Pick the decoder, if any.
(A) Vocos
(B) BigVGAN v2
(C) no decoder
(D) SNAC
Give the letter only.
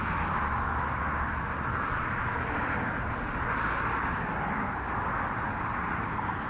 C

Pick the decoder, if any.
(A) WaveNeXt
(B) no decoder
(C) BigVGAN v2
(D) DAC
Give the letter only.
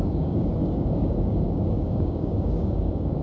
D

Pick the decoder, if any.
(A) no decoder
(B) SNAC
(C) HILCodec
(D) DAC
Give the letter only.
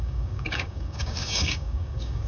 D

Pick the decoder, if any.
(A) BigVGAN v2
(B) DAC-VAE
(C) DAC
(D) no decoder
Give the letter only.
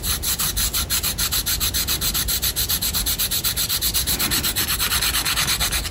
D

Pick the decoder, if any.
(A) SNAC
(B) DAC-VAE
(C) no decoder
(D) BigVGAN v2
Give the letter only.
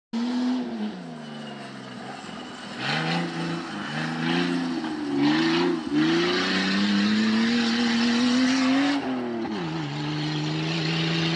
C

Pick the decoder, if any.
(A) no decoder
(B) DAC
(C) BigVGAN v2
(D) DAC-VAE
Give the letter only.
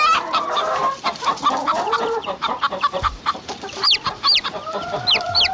C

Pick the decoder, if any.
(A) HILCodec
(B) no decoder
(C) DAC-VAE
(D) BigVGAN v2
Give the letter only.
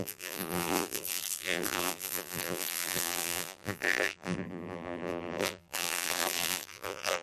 D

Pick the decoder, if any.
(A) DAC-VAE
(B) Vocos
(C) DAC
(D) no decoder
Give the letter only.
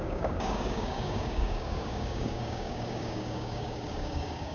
C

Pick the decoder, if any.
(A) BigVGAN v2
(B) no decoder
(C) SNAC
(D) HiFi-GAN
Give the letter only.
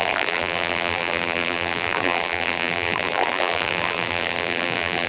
A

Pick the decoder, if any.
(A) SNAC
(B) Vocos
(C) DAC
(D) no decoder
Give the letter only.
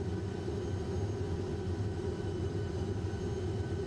D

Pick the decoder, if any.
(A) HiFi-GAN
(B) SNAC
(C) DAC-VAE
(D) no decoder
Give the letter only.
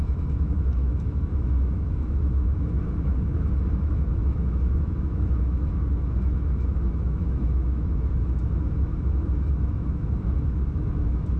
C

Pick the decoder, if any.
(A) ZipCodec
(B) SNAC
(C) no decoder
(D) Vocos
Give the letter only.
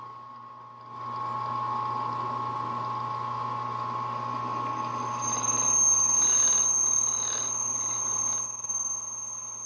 C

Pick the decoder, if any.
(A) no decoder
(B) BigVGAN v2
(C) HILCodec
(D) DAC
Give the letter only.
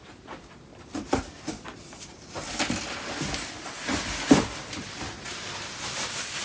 A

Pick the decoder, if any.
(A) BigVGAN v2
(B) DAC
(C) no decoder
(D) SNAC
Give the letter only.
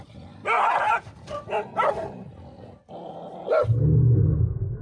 C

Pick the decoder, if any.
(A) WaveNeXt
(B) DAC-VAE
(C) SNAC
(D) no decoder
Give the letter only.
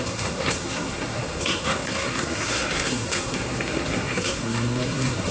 C